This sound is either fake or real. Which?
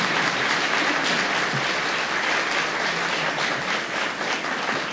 real